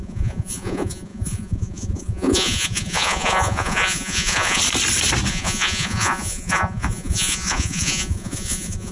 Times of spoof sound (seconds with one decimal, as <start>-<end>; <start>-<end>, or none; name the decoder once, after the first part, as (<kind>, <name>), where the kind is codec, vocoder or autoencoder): 0.0-4.6 (vocoder, Vocos); 5.3-8.9